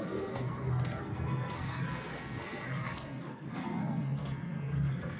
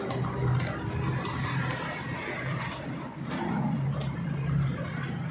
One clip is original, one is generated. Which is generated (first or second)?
first